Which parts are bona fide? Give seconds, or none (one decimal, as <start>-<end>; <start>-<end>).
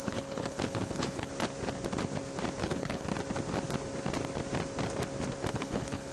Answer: 1.3-2.6; 3.1-5.5